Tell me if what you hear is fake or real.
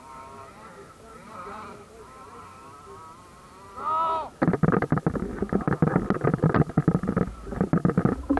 real